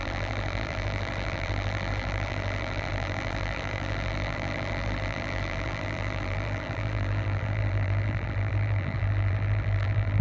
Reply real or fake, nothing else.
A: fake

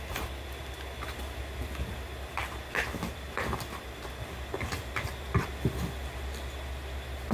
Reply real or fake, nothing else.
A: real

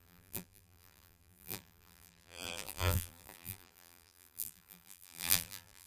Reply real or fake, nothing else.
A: fake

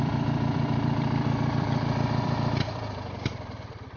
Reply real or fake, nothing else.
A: fake